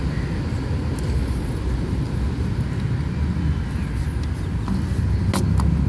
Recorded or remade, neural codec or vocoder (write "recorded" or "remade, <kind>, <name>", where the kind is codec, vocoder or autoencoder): recorded